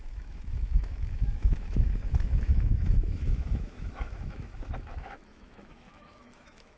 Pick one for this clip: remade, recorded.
remade